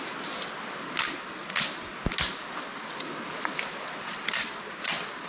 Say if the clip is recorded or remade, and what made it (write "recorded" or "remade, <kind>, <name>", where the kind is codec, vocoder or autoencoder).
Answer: recorded